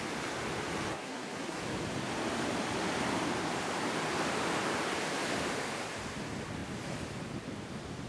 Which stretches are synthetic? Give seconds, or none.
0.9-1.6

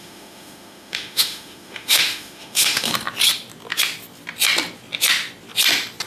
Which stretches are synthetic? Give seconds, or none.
0.0-2.9

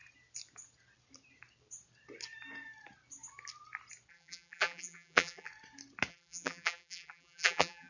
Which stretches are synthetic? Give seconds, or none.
4.1-5.5; 6.1-7.9